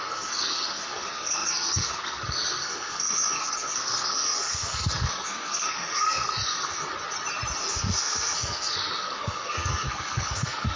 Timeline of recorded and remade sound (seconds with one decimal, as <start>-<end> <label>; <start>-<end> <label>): 0.0-6.8 remade; 6.8-7.6 recorded; 7.6-10.8 remade